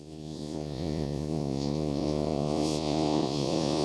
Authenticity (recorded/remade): remade